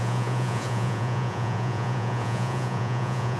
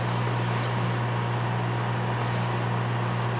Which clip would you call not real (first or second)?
first